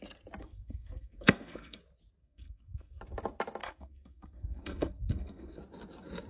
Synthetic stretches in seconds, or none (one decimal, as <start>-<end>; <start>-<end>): 0.4-1.8; 2.2-3.0; 3.6-5.6

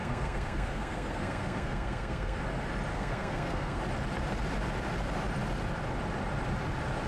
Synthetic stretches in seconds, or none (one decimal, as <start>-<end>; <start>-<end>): 0.0-2.4; 2.9-3.8

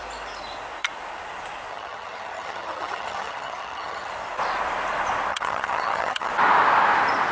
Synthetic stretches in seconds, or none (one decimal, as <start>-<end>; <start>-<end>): 1.7-4.1; 5.3-6.3